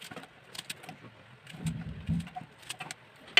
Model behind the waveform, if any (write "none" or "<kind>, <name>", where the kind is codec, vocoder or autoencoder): none